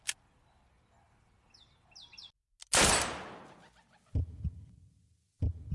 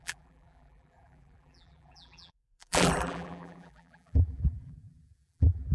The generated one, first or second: second